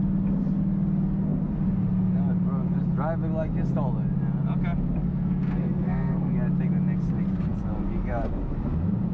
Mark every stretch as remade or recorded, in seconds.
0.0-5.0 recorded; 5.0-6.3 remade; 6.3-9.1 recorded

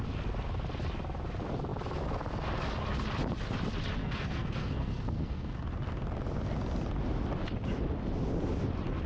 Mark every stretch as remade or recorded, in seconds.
0.0-4.0 recorded; 4.0-5.6 remade; 5.6-9.1 recorded

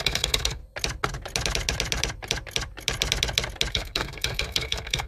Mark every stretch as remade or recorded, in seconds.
0.0-0.6 remade; 0.6-3.7 recorded; 3.7-5.1 remade

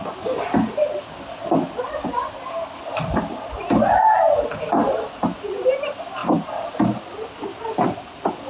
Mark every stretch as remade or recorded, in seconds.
0.0-8.5 recorded

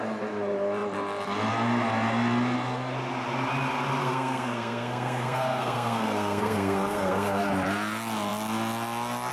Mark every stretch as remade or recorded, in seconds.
0.0-4.0 recorded; 4.0-7.4 remade; 7.4-9.3 recorded